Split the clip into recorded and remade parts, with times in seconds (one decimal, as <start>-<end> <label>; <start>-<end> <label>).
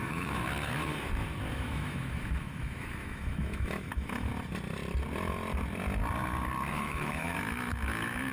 0.0-0.9 remade; 0.9-1.5 recorded; 1.5-4.3 remade; 4.3-6.7 recorded; 6.7-8.3 remade